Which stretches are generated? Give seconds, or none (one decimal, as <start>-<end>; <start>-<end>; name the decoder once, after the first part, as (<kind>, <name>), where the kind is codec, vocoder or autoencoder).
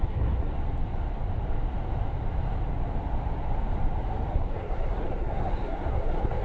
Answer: 0.0-0.5 (codec, SNAC); 4.3-6.4